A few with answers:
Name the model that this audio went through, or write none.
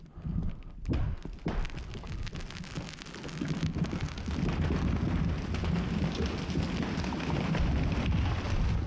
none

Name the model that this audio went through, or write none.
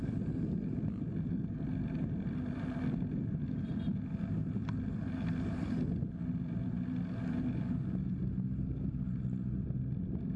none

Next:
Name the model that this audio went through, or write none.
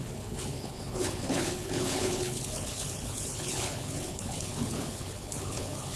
codec, HILCodec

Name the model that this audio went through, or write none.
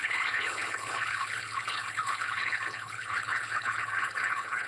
codec, HILCodec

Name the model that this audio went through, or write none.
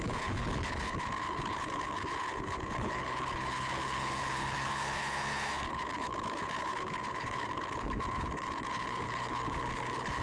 codec, HILCodec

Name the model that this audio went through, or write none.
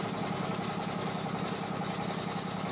none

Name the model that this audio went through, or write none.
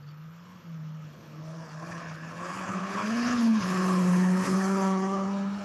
codec, HILCodec